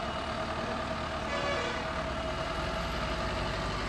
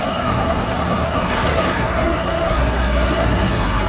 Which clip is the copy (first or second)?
second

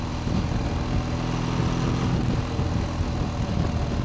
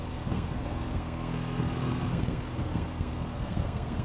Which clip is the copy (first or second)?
second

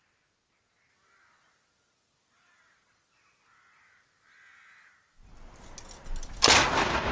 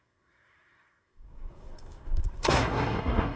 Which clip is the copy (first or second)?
second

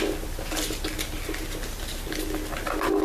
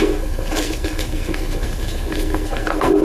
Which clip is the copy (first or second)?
second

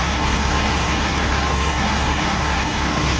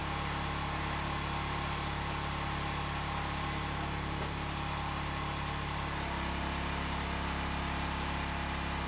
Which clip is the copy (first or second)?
first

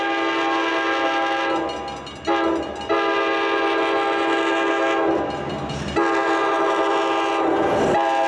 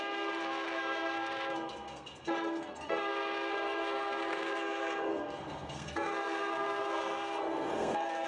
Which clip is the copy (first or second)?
second